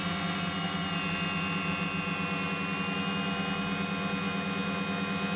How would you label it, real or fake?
real